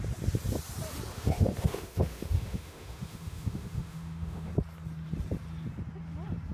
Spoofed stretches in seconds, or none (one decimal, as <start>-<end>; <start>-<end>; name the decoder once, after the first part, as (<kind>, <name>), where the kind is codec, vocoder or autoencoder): 1.1-4.5 (autoencoder, DAC-VAE)